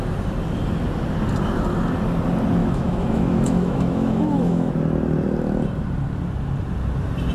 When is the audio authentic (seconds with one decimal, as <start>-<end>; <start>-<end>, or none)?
0.0-2.6; 4.7-7.3